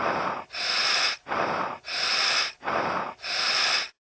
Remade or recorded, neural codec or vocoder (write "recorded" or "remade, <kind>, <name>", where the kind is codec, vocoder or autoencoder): recorded